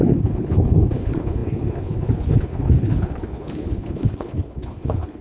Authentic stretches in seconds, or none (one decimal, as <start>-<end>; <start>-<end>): none